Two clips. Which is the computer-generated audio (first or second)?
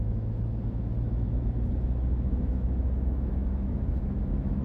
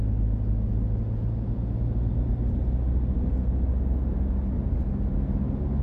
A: first